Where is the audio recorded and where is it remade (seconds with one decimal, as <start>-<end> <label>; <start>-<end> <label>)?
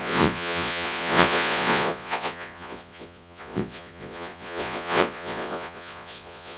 0.0-6.6 remade